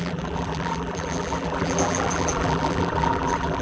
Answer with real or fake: fake